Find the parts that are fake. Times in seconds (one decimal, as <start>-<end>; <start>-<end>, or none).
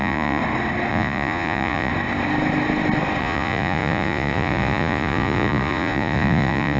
0.0-0.4; 0.9-1.9; 3.2-6.8